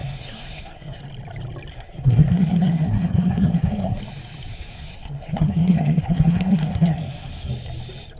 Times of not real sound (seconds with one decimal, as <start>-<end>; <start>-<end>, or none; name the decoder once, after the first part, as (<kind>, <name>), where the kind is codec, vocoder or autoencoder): 0.0-1.0 (codec, SNAC); 1.7-4.0; 4.5-7.5